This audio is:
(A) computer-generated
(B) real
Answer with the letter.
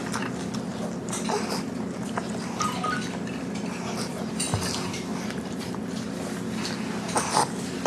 B